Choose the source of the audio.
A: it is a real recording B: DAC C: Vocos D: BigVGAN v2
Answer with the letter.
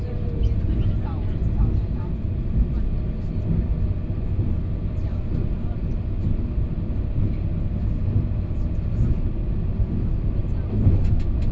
A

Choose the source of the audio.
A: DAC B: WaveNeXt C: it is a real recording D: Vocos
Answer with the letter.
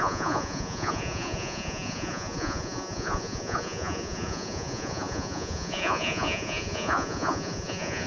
D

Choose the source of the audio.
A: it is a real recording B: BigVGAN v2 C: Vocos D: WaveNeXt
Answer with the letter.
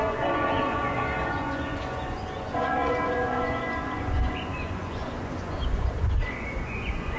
C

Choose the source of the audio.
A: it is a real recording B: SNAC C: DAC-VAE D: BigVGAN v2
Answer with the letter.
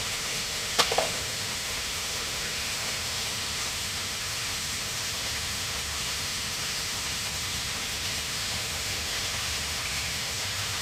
C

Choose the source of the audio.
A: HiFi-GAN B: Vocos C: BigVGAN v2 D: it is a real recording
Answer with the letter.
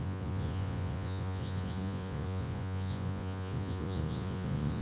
B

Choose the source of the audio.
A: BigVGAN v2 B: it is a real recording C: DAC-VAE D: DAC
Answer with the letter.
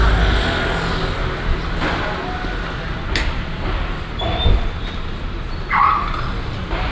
B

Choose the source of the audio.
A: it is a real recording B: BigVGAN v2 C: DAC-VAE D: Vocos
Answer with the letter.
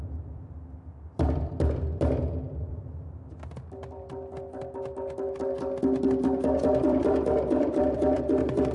B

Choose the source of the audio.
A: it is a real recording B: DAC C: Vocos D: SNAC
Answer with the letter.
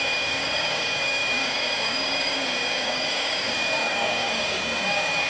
B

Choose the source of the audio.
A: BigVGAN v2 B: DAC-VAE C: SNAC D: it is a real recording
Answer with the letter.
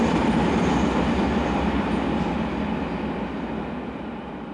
D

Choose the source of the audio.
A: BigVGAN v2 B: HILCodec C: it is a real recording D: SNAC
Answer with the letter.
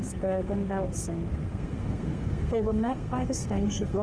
D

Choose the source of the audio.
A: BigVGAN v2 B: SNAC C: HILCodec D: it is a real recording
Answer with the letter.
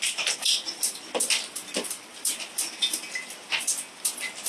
D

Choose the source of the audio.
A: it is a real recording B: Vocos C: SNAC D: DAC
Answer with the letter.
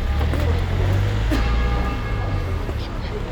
A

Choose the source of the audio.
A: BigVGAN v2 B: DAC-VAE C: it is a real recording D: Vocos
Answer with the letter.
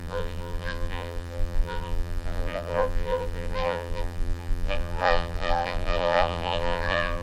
A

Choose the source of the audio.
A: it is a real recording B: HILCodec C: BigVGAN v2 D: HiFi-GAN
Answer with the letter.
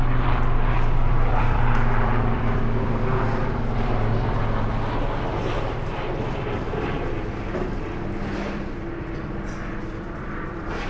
C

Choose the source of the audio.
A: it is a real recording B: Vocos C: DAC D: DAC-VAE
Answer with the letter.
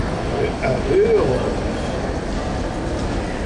A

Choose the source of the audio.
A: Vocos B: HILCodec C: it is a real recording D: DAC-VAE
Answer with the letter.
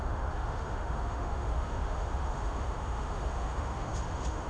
D